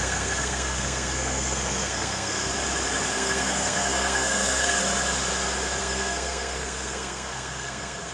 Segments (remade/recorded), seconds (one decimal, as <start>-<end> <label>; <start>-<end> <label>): 0.0-2.5 remade; 2.5-3.1 recorded; 3.1-4.8 remade; 4.8-5.8 recorded; 5.8-8.1 remade